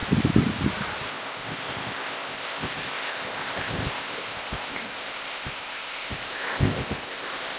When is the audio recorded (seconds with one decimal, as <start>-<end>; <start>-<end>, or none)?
0.0-1.1